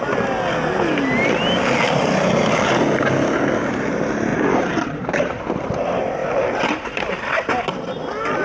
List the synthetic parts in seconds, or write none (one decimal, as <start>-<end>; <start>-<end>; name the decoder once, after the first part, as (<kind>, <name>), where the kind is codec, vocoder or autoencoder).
4.3-5.7 (vocoder, BigVGAN v2); 6.2-7.0